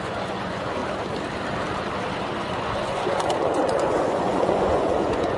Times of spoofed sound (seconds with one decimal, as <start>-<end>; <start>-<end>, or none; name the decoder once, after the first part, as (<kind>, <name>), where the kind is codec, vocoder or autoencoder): 0.0-0.8 (vocoder, Vocos); 2.4-5.4